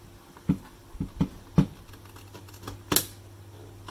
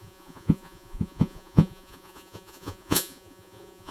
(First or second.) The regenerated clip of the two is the second